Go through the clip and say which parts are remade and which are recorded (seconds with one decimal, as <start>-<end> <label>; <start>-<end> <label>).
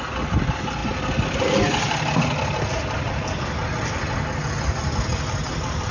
0.0-5.9 recorded